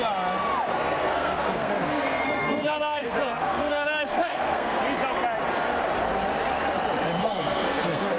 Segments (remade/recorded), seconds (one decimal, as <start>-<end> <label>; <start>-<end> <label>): 0.0-0.7 recorded; 0.7-4.8 remade; 4.8-7.2 recorded; 7.2-8.2 remade